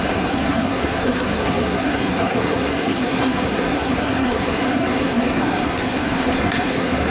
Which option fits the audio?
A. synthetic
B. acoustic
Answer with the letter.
A